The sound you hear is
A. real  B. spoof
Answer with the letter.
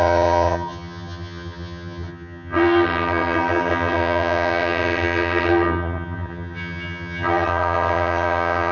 B